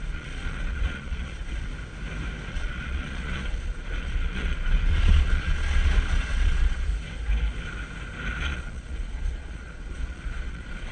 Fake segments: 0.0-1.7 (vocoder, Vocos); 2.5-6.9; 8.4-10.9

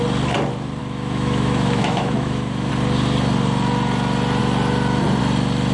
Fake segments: 0.8-2.7 (autoencoder, DAC-VAE)